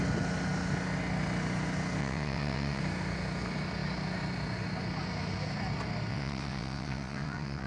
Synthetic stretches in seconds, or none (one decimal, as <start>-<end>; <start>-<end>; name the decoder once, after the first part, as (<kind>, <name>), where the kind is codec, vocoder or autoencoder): 2.0-2.8 (vocoder, WaveNeXt); 6.1-7.7